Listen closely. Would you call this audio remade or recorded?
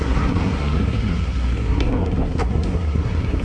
remade